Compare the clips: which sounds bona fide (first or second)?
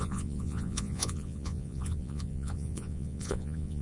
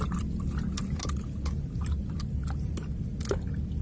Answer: second